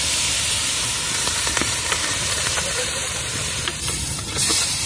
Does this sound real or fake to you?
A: fake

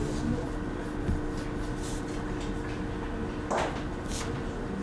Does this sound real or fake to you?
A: real